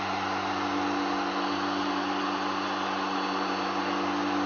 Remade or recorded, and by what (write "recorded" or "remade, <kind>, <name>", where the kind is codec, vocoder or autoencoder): recorded